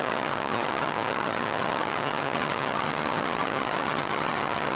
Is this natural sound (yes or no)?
no